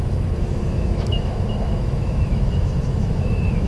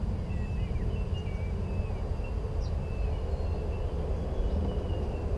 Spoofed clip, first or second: first